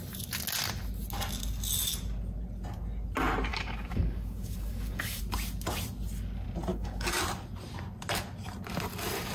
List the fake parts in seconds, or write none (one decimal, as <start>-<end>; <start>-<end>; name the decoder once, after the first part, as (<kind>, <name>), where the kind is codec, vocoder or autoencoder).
3.5-5.2 (codec, DAC); 6.7-7.2